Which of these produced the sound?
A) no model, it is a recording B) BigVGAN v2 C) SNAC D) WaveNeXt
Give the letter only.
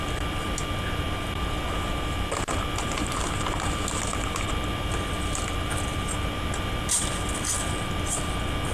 A